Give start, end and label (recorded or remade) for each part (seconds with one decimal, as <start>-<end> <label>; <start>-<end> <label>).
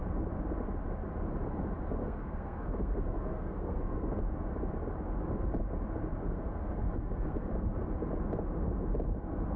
0.0-2.0 recorded; 2.0-4.2 remade; 4.2-6.2 recorded; 6.2-7.5 remade; 7.5-9.6 recorded